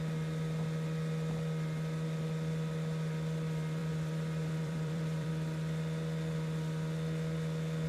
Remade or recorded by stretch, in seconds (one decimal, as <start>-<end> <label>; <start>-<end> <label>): 0.0-3.8 recorded; 3.8-5.3 remade; 5.3-7.9 recorded